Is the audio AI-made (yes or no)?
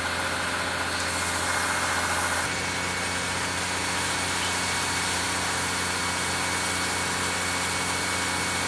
no